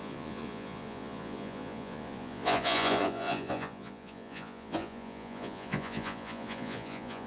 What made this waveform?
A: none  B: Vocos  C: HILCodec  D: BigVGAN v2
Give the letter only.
B